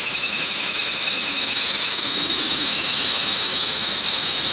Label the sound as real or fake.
fake